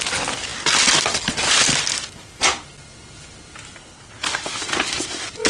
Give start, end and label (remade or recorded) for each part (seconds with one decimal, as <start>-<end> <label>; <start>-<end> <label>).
0.0-3.8 recorded; 3.8-4.4 remade; 4.4-5.5 recorded